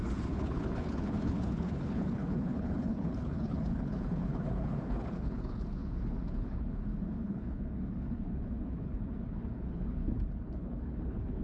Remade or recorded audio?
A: remade